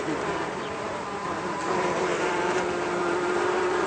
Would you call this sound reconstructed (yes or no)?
yes